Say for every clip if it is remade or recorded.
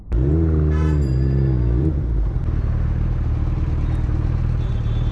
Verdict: recorded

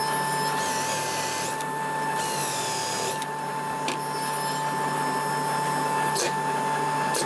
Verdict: recorded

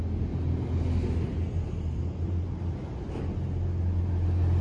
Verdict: recorded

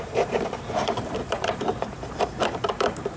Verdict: remade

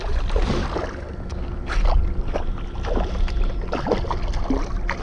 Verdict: recorded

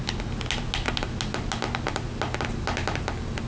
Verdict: recorded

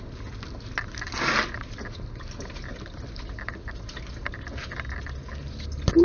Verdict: recorded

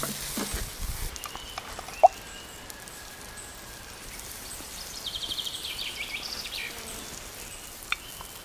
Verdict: recorded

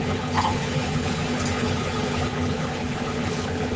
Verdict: remade